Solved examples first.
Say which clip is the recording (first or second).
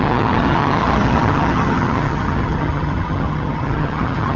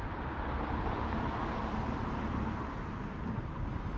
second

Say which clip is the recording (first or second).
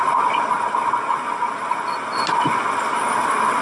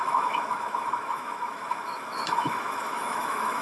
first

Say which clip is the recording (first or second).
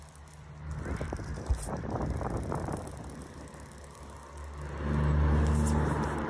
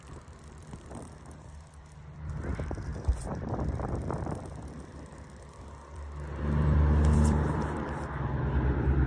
first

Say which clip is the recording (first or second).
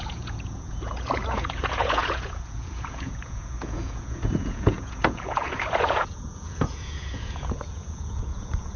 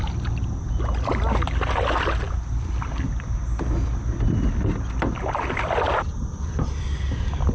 second